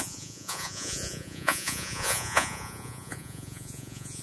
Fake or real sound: fake